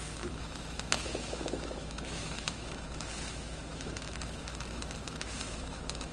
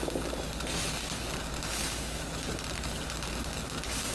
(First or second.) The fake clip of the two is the first